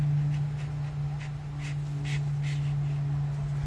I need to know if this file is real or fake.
real